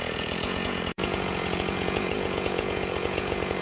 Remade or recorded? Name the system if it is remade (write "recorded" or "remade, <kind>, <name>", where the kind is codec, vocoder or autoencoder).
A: remade, vocoder, Vocos